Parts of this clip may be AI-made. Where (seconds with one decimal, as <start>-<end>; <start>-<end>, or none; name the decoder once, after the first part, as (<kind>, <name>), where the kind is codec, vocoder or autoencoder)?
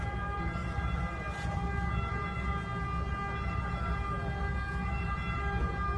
none